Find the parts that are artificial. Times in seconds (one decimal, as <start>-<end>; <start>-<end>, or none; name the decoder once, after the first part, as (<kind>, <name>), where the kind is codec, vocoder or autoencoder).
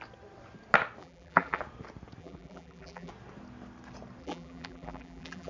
1.0-1.6 (vocoder, BigVGAN v2); 2.2-3.1; 4.2-5.5